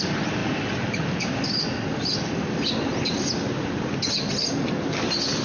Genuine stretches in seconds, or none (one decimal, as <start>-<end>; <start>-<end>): 0.0-5.4